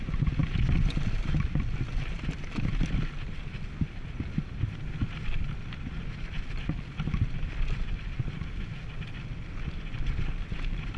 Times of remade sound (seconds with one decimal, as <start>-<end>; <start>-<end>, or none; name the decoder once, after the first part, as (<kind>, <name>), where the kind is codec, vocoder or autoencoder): none